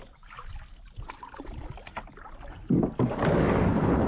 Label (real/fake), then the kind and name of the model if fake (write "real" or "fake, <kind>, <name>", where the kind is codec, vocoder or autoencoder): real